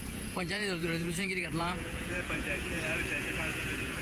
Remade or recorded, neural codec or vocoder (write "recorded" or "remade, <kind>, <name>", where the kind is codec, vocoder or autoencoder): remade, vocoder, Vocos